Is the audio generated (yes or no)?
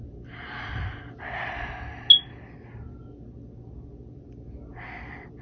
no